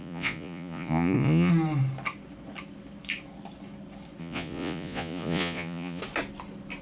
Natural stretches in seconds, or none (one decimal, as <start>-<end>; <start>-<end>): 1.5-4.2; 6.0-6.8